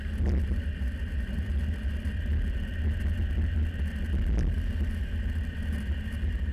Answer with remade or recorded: recorded